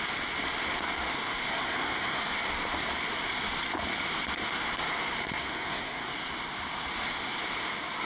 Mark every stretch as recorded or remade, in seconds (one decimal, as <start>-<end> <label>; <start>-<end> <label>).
0.0-1.5 recorded; 1.5-2.2 remade; 2.2-5.4 recorded; 5.4-6.1 remade; 6.1-8.1 recorded